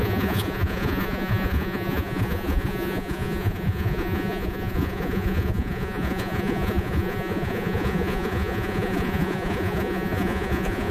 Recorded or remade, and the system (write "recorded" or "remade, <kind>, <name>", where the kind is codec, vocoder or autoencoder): remade, vocoder, Vocos